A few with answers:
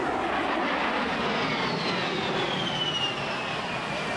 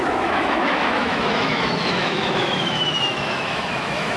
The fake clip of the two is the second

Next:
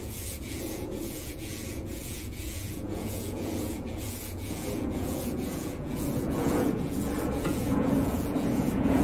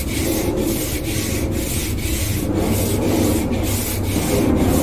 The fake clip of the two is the first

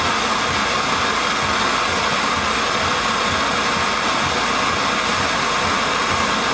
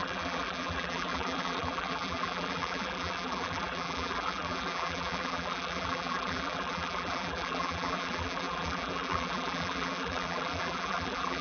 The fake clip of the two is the second